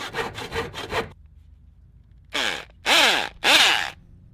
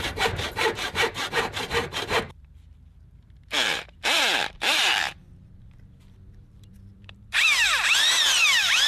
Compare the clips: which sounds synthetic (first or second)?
second